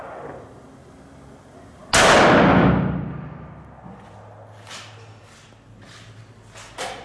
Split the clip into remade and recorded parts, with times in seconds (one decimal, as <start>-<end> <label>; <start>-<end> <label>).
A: 0.0-7.0 recorded